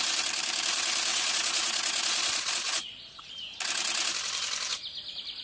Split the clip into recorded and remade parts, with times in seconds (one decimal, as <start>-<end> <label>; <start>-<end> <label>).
0.0-1.1 recorded; 1.1-3.3 remade; 3.3-5.4 recorded